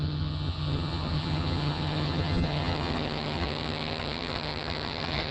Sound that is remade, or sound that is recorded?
remade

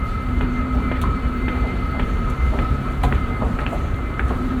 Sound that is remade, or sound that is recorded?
remade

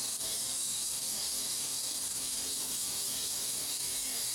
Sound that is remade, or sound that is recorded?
remade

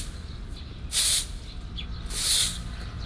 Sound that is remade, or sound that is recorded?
recorded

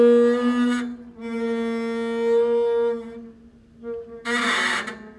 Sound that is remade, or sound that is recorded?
recorded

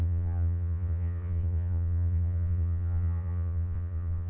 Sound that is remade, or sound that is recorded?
remade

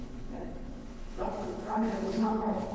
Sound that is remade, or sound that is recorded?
remade